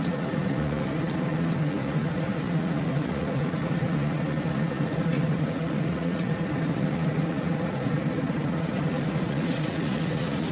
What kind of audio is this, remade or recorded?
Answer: remade